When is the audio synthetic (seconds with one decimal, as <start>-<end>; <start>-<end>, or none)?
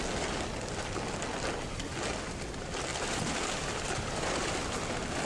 2.9-4.5